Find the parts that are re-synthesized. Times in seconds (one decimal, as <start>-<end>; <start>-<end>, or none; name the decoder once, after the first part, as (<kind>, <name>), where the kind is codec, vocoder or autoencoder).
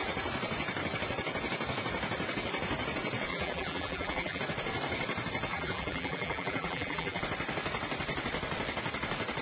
3.3-4.4 (vocoder, BigVGAN v2); 5.5-7.2